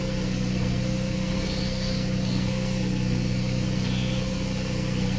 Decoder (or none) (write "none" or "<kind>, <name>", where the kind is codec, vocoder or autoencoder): codec, SNAC